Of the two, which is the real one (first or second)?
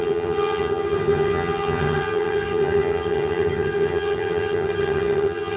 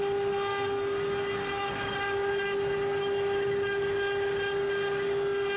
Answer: second